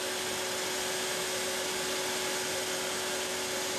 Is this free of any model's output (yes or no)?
yes